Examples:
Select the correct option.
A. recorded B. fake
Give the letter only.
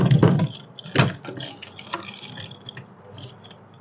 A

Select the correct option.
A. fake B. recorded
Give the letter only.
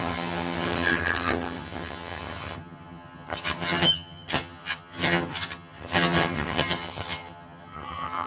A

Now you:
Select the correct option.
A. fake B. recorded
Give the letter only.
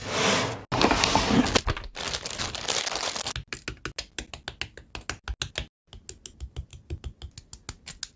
B